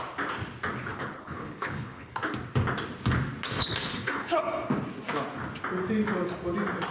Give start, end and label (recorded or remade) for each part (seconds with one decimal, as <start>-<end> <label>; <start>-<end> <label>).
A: 0.0-0.9 recorded; 0.9-2.2 remade; 2.2-3.6 recorded; 3.6-4.4 remade; 4.4-6.9 recorded